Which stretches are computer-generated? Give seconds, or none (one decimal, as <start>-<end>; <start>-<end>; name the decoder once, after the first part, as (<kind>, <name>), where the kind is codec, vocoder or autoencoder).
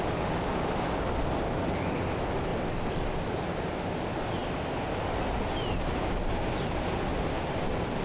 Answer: none